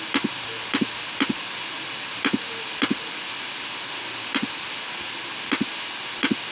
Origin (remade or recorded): recorded